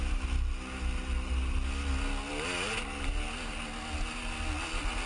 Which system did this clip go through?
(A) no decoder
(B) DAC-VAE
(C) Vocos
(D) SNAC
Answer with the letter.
A